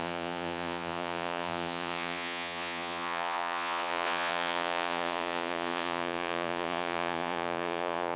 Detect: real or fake fake